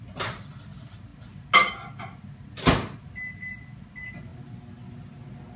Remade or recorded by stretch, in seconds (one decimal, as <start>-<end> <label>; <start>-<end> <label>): 0.0-5.6 recorded